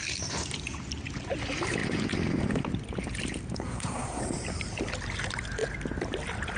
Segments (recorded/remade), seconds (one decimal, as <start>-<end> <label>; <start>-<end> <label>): 0.0-3.6 recorded; 3.6-4.2 remade; 4.2-6.6 recorded